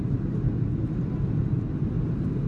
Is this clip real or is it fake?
real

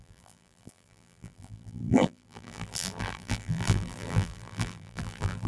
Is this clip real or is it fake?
fake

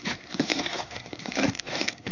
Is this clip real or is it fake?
fake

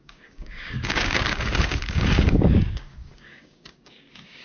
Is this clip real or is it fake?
fake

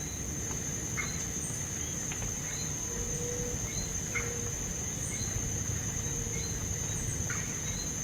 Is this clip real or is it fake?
real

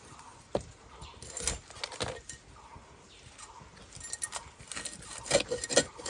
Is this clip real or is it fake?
real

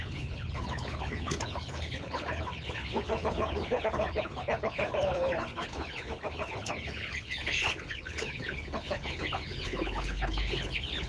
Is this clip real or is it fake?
fake